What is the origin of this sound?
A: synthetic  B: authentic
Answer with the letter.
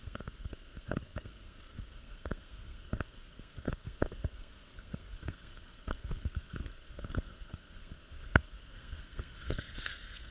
A